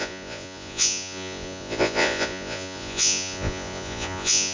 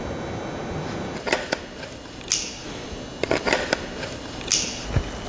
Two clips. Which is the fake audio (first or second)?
first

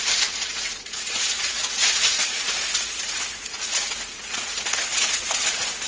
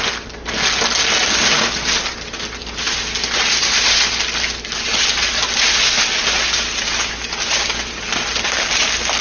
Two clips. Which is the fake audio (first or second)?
first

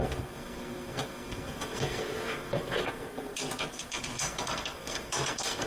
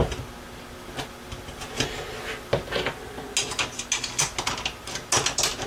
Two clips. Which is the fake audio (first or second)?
first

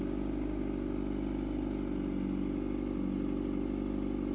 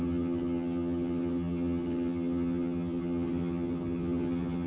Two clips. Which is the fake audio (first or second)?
second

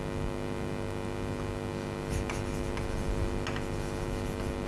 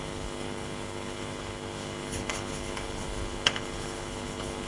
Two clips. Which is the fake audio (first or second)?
second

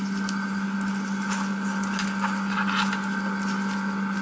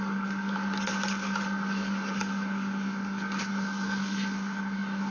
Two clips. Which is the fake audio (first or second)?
second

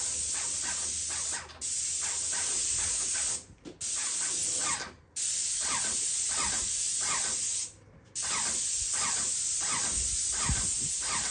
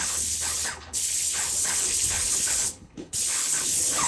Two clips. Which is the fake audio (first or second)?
second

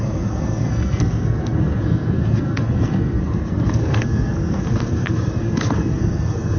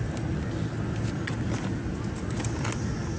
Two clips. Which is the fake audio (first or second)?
first